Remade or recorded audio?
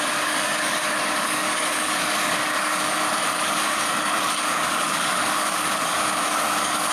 remade